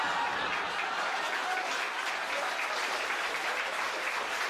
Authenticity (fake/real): real